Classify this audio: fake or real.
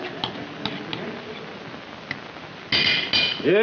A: real